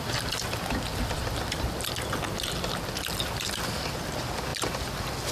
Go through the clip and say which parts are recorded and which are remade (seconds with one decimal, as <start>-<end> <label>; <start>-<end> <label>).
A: 0.0-5.3 recorded